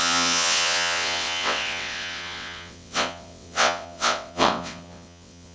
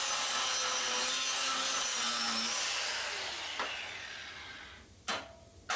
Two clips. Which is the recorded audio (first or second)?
second